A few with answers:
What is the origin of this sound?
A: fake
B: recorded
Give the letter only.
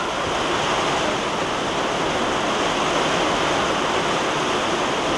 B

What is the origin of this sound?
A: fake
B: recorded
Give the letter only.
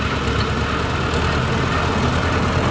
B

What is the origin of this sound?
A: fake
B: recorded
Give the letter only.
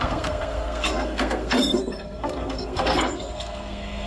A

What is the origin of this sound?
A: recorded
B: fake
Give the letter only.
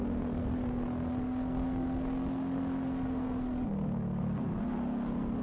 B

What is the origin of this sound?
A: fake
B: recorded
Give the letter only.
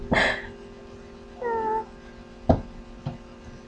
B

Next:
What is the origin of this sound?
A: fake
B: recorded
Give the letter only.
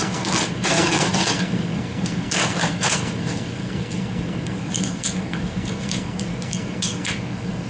A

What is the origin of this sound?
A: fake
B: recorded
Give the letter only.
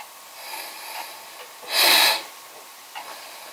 B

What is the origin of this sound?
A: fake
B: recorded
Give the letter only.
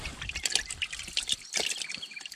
B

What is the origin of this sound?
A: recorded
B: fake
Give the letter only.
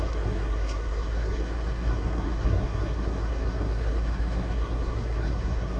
B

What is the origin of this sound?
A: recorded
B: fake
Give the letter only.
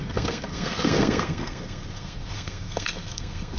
B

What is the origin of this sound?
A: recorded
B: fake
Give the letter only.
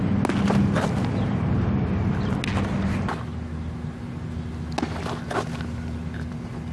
A